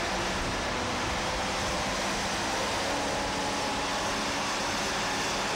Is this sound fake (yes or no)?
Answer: no